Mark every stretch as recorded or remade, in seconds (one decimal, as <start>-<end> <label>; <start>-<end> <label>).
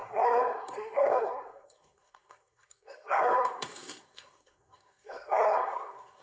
0.0-6.2 remade